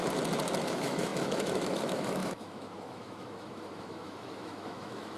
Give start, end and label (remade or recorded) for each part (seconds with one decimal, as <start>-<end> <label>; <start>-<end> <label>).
0.0-0.6 recorded; 0.6-5.2 remade

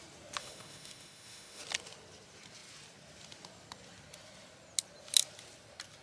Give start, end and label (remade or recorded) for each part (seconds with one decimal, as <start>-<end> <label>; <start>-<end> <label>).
0.0-0.4 recorded; 0.4-1.6 remade; 1.6-6.0 recorded

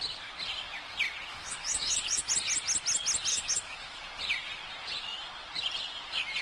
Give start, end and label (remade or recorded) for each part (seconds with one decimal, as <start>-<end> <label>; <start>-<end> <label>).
0.0-1.3 recorded; 1.3-2.3 remade; 2.3-3.3 recorded; 3.3-4.0 remade; 4.0-6.4 recorded

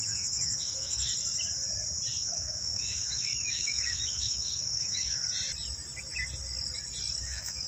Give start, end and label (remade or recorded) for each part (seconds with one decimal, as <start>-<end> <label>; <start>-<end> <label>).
0.0-1.1 remade; 1.1-2.2 recorded; 2.2-5.2 remade; 5.2-7.2 recorded; 7.2-7.7 remade

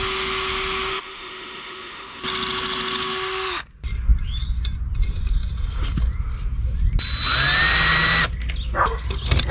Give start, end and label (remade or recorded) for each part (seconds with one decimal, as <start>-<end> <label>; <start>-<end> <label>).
0.0-0.9 recorded; 0.9-2.2 remade; 2.2-9.5 recorded

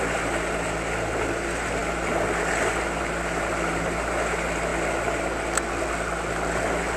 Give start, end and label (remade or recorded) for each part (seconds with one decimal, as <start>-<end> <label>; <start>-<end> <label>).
0.0-7.0 recorded